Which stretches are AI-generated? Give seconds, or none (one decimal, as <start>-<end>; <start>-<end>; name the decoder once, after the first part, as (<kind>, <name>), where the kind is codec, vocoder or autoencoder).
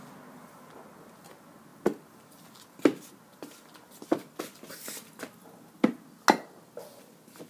none